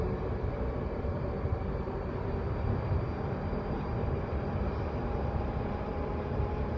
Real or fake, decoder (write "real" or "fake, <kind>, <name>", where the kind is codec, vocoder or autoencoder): fake, vocoder, BigVGAN v2